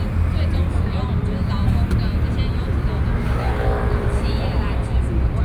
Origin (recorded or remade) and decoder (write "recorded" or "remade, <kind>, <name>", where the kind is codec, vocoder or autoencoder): recorded